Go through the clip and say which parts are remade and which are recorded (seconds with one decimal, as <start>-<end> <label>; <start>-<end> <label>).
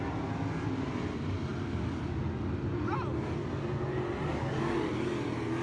0.0-5.6 recorded